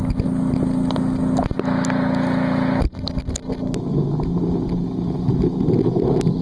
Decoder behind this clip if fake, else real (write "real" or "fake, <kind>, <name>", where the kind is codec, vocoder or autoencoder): real